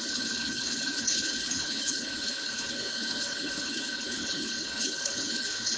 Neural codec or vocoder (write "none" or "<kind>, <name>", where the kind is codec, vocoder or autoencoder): codec, HILCodec